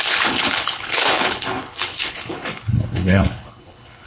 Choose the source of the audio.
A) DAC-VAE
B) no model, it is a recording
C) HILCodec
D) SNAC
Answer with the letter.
C